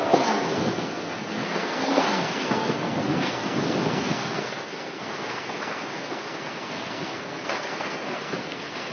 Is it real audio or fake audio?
fake